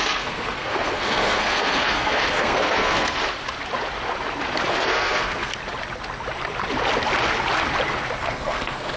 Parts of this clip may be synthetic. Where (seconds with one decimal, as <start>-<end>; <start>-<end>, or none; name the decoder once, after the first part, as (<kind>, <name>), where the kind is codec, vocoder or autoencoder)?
0.0-3.2 (codec, SNAC); 4.7-5.5; 8.2-9.0